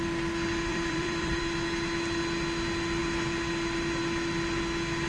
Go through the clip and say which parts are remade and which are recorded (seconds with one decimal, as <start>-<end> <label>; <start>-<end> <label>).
0.0-0.7 recorded; 0.7-1.4 remade; 1.4-5.1 recorded